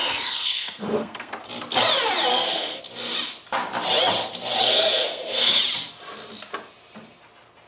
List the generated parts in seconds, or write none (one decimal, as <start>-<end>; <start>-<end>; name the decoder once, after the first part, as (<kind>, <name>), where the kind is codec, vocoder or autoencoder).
0.0-1.3 (codec, SNAC); 2.3-2.8; 4.6-5.6